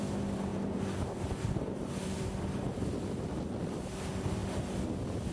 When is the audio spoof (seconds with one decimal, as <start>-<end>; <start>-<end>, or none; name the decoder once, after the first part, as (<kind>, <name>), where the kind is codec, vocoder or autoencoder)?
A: none